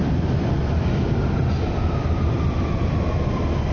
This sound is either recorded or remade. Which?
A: recorded